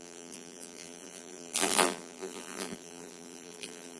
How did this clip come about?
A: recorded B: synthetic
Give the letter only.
B